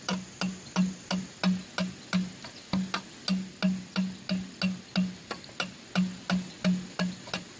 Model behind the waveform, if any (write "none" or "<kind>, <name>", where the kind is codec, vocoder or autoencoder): none